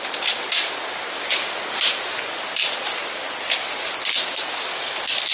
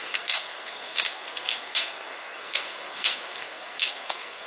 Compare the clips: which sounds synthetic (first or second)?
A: second